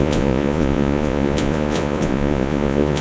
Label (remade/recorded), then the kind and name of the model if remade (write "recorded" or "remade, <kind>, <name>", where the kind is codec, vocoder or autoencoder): remade, vocoder, Vocos